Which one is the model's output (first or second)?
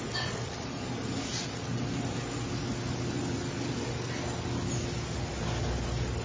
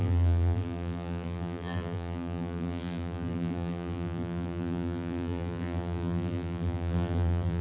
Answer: second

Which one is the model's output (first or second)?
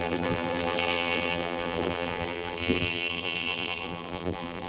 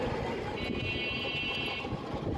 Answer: first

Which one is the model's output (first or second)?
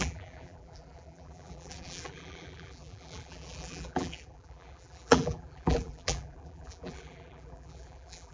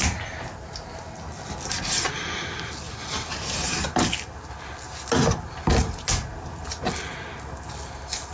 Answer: first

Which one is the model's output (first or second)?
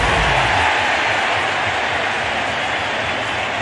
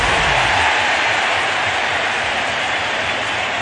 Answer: second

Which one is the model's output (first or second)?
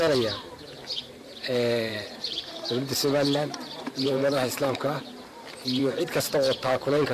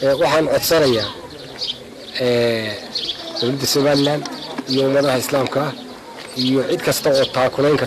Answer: first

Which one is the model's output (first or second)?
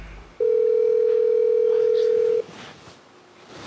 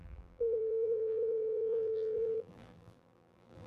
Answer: second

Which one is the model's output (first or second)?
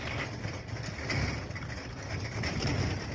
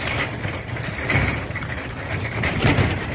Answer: second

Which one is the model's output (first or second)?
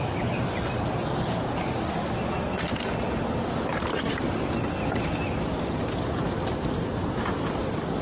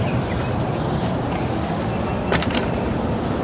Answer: second